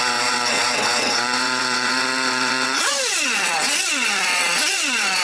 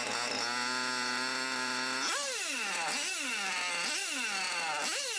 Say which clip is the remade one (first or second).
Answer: first